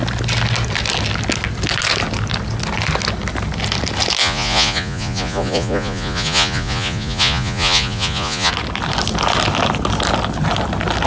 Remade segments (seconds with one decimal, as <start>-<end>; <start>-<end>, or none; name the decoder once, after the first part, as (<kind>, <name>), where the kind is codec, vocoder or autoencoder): 4.2-8.5 (vocoder, Vocos)